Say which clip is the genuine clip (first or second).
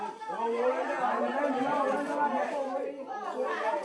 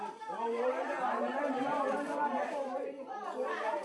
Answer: first